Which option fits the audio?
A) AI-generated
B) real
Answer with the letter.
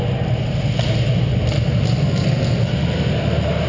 B